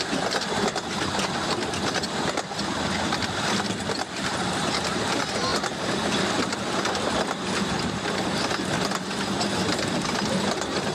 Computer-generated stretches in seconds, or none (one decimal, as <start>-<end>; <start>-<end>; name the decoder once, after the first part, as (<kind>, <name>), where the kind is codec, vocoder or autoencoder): none